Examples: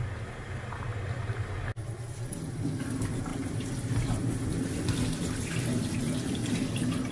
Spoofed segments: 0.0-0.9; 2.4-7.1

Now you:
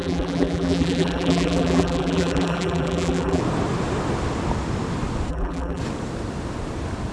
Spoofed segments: 0.0-3.4; 5.3-5.8